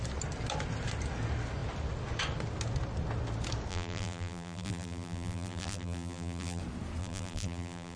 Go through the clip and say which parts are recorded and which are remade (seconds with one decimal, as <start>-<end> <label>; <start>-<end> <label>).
0.0-3.7 recorded; 3.7-6.6 remade; 6.6-7.0 recorded; 7.0-8.0 remade